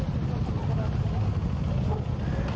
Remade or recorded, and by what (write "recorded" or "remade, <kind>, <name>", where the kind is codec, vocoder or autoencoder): recorded